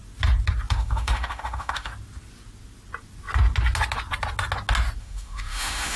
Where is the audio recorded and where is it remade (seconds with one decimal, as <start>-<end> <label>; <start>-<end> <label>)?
0.0-0.7 recorded; 0.7-1.9 remade; 1.9-5.0 recorded; 5.0-6.0 remade